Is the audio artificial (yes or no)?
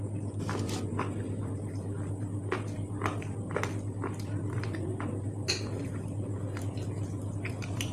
no